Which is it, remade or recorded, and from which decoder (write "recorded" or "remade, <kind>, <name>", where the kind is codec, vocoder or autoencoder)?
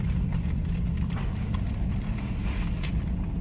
recorded